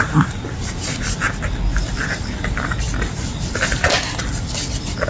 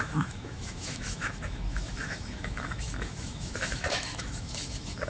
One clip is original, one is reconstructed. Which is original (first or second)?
first